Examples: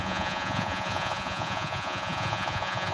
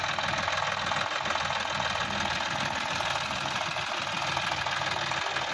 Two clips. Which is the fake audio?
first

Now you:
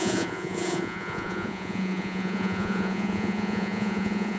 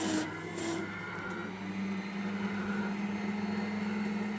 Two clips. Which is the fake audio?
first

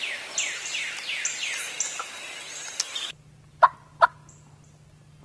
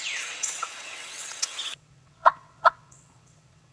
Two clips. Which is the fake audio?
second